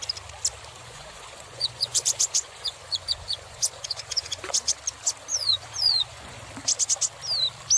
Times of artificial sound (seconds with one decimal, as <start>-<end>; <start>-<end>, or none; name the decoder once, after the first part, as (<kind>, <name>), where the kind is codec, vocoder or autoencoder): 0.7-4.7 (vocoder, Vocos); 5.3-6.4

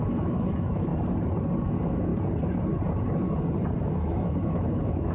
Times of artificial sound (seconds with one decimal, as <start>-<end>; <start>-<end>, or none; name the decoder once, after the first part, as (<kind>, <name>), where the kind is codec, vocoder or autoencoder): 0.0-0.9 (autoencoder, DAC-VAE); 1.7-2.1; 3.8-5.1